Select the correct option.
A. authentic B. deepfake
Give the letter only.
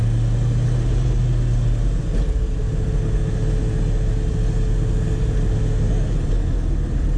A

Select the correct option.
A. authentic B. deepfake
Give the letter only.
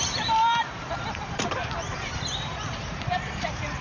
B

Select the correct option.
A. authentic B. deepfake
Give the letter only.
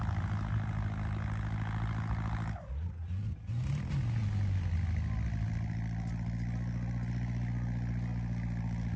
A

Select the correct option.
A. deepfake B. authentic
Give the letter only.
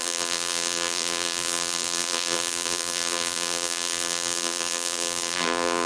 A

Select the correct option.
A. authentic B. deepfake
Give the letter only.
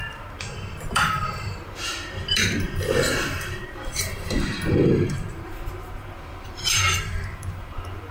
B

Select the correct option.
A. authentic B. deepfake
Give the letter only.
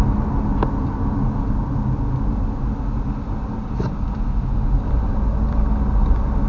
A